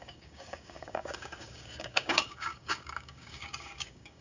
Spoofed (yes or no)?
yes